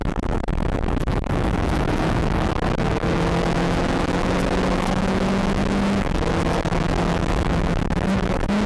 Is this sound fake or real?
fake